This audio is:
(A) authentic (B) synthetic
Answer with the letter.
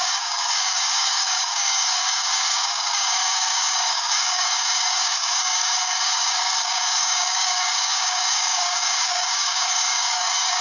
B